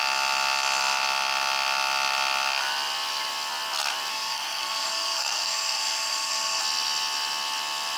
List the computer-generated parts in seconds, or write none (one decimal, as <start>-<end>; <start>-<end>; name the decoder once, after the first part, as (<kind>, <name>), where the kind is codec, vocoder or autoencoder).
4.1-6.6 (codec, SNAC)